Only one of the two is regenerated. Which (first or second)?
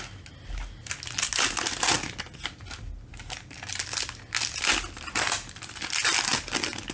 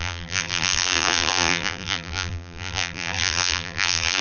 second